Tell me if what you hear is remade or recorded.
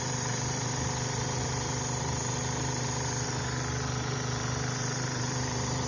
remade